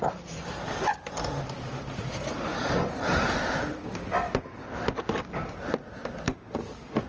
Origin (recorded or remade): recorded